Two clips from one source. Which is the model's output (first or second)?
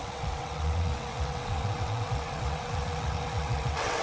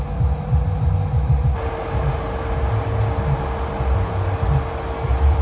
first